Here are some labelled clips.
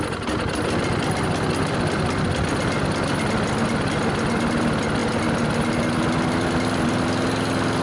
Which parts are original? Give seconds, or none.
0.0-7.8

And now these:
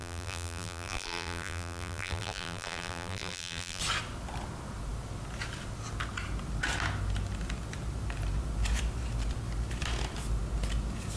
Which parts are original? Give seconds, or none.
3.8-11.2

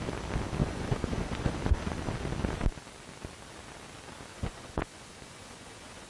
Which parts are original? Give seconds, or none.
0.0-0.6; 1.5-4.3

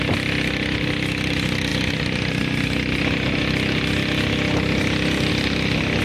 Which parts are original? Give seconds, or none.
0.0-6.0